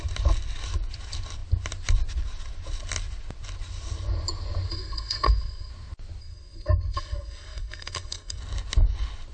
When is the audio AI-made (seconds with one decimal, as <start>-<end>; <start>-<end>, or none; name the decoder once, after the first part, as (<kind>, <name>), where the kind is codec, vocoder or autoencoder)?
4.7-5.7 (codec, SNAC); 6.2-8.4